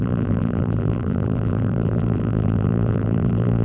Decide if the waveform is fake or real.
fake